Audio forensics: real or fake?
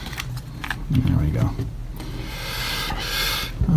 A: real